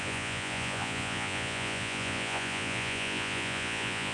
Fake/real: fake